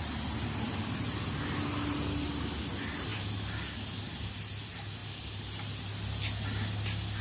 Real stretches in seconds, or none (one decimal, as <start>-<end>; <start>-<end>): 0.0-7.2